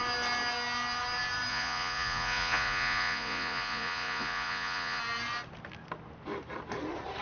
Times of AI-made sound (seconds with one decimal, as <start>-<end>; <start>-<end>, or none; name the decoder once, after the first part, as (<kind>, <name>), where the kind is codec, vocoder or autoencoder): 1.5-5.0 (vocoder, Vocos)